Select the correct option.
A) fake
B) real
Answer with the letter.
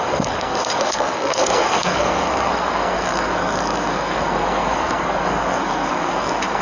A